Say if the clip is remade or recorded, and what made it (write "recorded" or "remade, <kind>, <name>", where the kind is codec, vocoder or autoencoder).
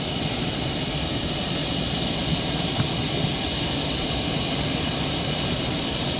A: remade, vocoder, BigVGAN v2